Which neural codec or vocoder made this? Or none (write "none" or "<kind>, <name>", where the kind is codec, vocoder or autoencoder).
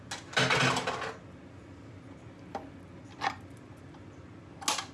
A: none